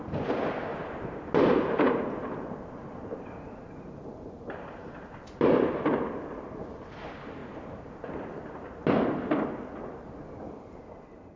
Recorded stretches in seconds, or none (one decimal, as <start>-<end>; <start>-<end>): 0.0-0.7; 5.3-7.4; 8.1-11.4